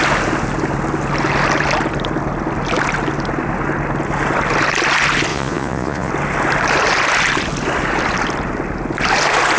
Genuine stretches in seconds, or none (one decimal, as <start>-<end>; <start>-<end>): 0.0-5.3; 6.1-9.6